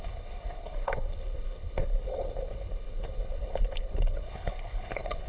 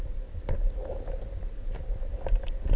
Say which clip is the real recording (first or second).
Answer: second